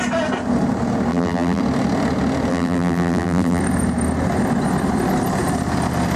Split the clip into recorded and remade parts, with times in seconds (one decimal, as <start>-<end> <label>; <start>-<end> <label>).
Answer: 0.0-1.1 recorded; 1.1-1.6 remade; 1.6-2.5 recorded; 2.5-3.6 remade; 3.6-6.2 recorded